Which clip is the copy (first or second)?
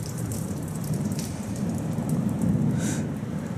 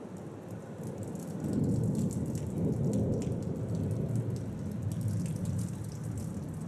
first